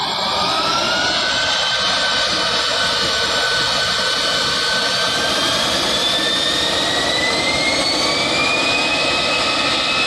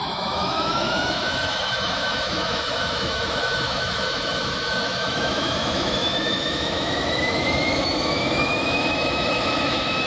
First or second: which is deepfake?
second